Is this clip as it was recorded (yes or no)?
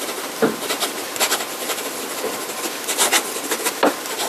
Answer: yes